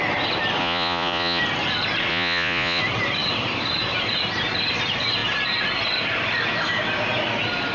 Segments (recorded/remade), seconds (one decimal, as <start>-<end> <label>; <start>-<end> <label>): 0.0-0.6 recorded; 0.6-1.4 remade; 1.4-2.1 recorded; 2.1-2.8 remade; 2.8-7.7 recorded